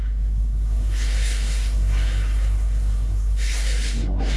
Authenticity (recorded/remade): remade